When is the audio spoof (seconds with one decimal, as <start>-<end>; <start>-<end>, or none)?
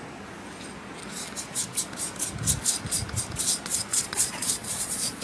3.9-5.2